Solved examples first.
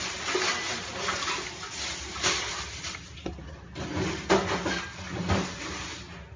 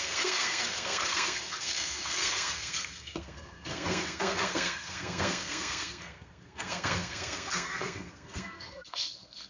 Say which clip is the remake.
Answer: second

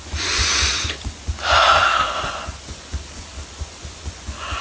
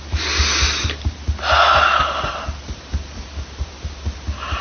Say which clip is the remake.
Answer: first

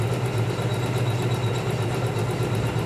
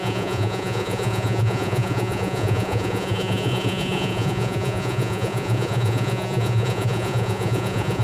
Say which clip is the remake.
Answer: second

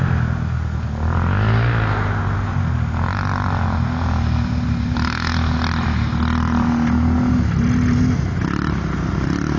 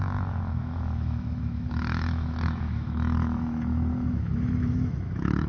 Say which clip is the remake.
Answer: second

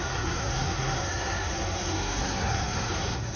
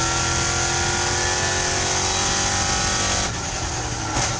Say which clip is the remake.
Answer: first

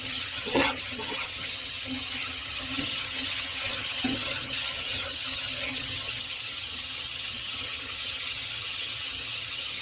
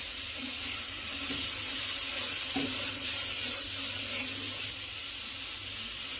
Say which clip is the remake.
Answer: first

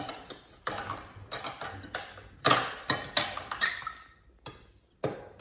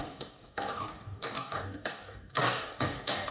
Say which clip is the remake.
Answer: second